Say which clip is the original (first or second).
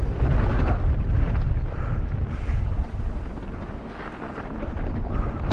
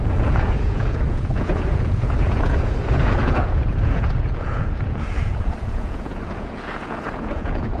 first